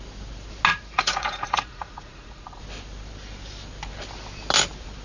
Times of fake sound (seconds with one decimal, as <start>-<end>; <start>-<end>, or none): 0.7-2.6